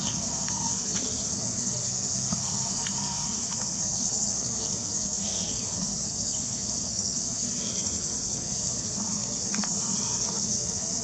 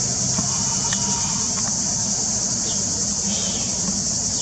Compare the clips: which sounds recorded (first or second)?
second